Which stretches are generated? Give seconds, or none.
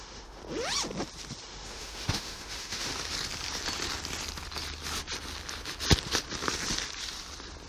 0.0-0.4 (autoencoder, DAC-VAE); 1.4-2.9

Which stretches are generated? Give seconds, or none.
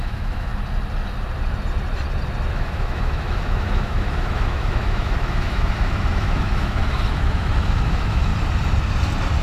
0.0-0.5 (autoencoder, DAC-VAE); 2.5-8.3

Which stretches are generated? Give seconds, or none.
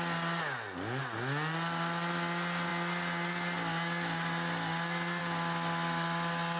none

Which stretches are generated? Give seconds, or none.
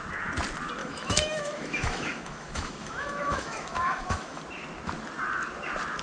0.8-4.4 (autoencoder, DAC-VAE)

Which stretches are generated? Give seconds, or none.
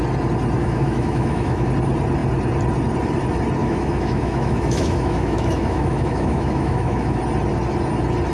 0.6-1.7 (autoencoder, DAC-VAE); 3.6-7.2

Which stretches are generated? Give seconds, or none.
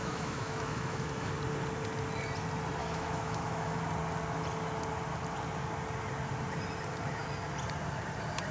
0.0-1.3 (autoencoder, DAC-VAE); 2.8-3.8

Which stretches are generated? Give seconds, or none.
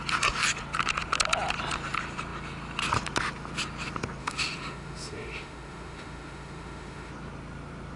4.2-7.1 (autoencoder, DAC-VAE)